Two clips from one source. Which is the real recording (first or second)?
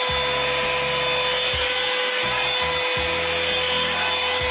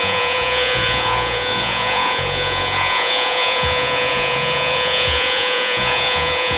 first